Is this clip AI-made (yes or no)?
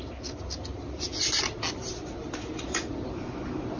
no